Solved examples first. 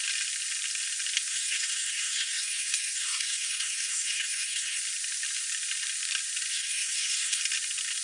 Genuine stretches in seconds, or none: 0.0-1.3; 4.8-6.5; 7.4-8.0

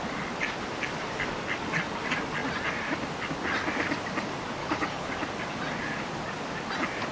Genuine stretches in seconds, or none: 0.0-4.6; 5.1-7.1

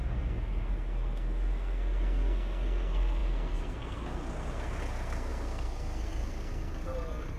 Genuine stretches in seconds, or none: none

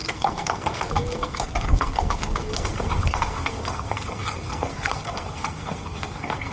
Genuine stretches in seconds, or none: none

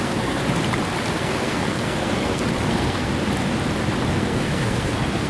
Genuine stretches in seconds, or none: 0.4-1.1; 3.1-4.1

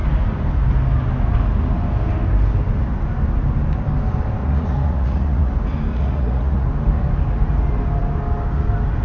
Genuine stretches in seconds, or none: 0.0-4.4; 5.5-5.9; 6.7-9.0

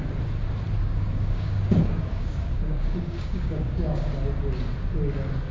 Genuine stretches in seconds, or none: 0.0-0.8; 4.1-5.5